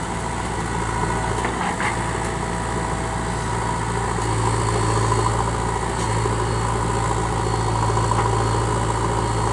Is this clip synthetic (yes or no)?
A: no